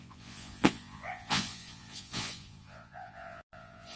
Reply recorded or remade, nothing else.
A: remade